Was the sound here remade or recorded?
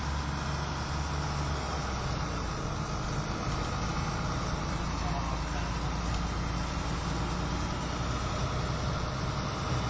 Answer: recorded